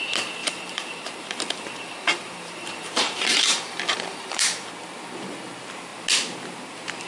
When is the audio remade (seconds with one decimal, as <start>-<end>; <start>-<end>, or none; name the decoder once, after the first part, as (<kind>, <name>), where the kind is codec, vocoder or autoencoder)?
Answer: 0.4-4.7 (vocoder, BigVGAN v2)